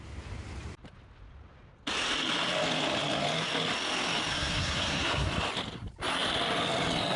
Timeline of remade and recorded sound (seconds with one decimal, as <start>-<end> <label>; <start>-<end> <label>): 0.0-4.3 recorded; 4.3-5.3 remade; 5.3-7.2 recorded